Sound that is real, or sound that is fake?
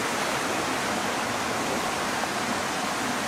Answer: real